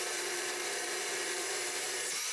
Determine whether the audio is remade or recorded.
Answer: remade